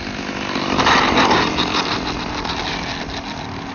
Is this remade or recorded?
recorded